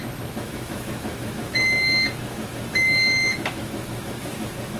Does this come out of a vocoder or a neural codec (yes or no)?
yes